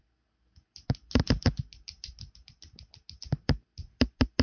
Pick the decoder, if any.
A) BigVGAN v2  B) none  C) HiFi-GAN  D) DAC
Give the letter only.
B